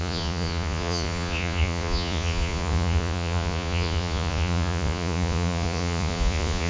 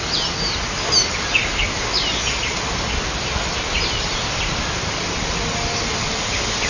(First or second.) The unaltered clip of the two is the second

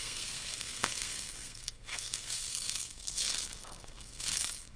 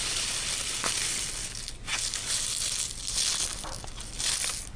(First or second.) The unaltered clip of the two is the second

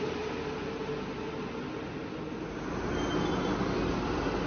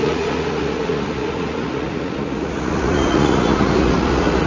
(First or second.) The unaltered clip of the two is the first